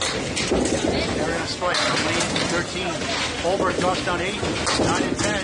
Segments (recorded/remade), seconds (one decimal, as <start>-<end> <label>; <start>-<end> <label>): 0.0-5.4 recorded